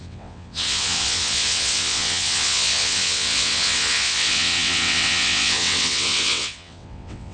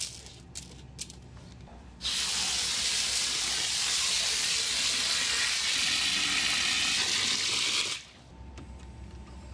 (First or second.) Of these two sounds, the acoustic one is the second